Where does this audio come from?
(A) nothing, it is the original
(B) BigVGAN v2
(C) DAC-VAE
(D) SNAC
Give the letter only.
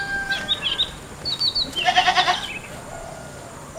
A